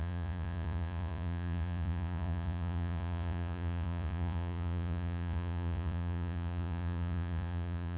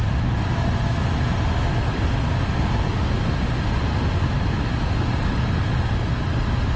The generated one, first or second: first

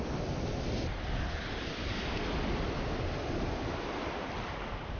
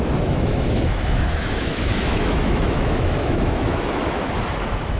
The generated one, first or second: second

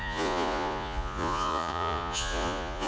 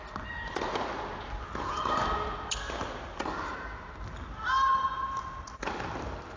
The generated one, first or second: first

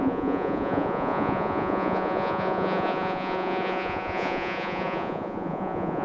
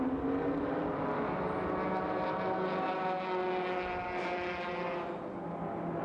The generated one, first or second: first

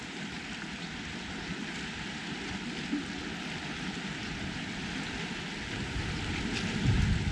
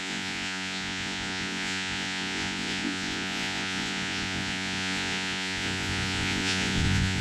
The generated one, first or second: second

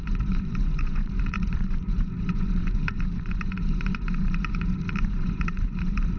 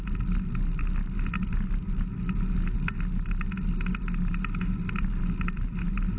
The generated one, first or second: first